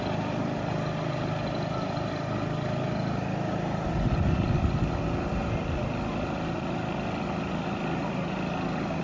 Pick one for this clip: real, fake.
real